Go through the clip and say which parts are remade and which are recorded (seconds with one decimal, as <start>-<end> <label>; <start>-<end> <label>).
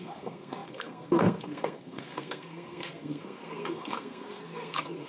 0.0-5.1 remade